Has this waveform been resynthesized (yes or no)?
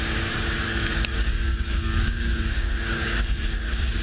yes